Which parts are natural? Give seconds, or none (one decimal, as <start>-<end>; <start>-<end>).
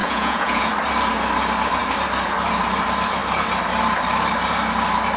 0.7-5.2